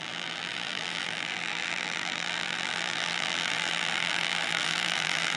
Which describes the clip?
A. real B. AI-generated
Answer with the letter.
B